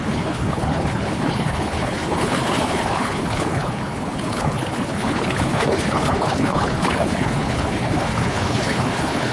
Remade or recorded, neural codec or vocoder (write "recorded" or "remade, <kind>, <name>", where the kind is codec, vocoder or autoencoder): remade, codec, HILCodec